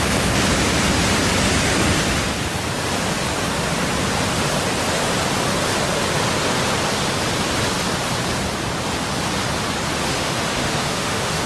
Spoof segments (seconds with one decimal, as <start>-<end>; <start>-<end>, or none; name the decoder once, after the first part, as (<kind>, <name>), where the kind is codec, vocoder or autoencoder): 10.1-11.5 (autoencoder, DAC-VAE)

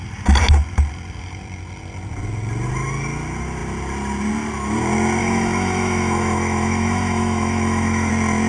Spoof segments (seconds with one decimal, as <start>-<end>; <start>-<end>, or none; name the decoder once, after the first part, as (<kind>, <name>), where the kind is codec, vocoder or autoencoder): 5.2-8.1 (autoencoder, DAC-VAE)

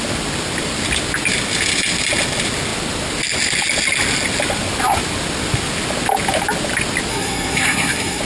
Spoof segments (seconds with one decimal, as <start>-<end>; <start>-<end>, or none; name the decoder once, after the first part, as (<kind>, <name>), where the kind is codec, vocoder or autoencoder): 7.1-8.2 (codec, SNAC)